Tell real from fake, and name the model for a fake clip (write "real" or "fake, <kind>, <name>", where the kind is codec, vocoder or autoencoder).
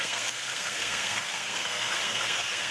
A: fake, codec, SNAC